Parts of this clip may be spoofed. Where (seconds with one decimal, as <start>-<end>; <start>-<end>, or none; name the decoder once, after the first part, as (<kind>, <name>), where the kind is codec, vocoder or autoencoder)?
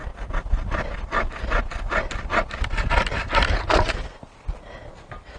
none